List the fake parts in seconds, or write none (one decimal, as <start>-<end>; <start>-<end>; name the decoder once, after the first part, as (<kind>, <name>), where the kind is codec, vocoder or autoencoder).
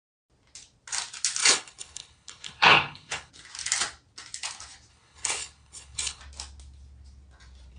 1.4-3.3 (codec, HILCodec); 4.9-6.2